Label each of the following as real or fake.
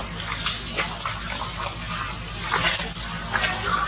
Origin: real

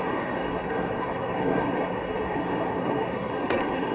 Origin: fake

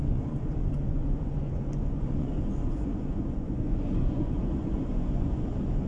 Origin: fake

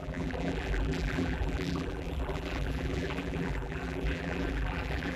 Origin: fake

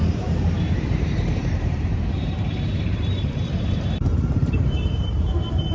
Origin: fake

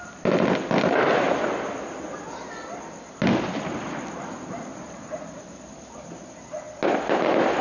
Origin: real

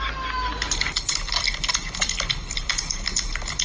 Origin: real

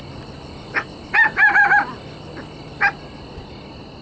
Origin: real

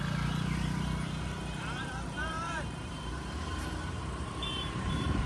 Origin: fake